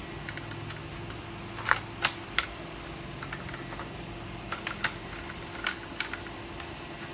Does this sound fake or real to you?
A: real